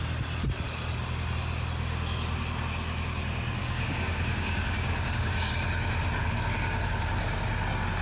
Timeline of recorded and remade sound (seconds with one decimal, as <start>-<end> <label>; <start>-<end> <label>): 0.0-3.6 recorded; 3.6-5.5 remade; 5.5-8.0 recorded